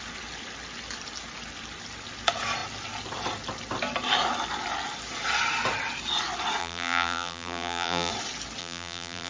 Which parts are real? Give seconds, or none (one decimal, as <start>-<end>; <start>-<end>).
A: 0.0-6.6; 8.1-8.6